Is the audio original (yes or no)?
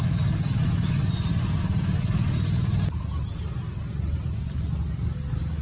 yes